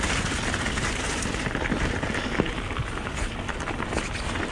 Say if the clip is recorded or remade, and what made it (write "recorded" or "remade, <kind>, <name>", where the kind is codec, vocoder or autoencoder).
recorded